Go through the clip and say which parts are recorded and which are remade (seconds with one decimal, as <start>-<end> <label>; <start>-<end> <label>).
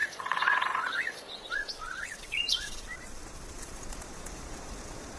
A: 0.0-5.2 remade